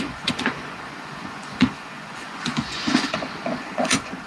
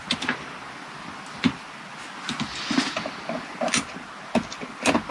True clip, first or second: second